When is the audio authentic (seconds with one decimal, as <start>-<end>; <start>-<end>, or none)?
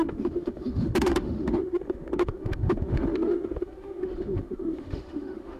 none